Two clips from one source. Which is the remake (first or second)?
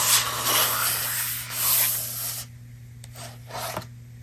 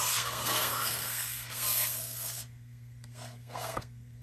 second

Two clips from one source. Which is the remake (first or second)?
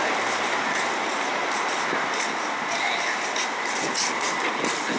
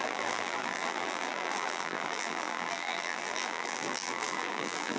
second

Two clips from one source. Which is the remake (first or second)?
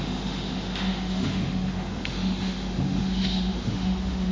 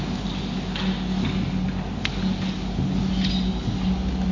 first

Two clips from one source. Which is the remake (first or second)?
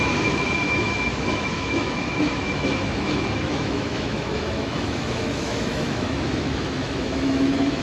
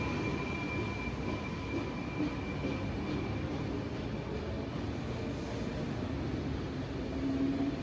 first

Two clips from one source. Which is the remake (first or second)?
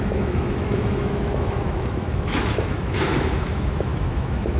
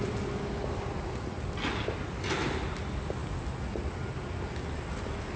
first